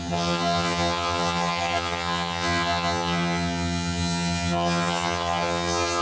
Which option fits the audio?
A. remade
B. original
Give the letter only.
A